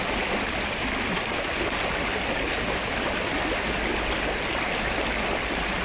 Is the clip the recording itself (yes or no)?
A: yes